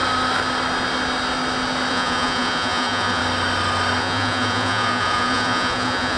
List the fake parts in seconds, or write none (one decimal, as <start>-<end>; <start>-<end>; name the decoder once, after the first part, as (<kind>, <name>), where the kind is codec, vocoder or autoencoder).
1.9-3.2 (vocoder, Vocos); 4.0-6.2